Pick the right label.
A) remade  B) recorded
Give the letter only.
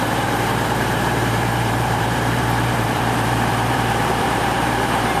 A